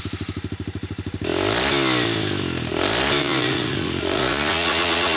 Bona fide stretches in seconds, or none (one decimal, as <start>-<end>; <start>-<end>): 0.0-3.2